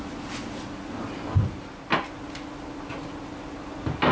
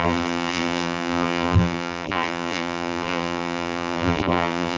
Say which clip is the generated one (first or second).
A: second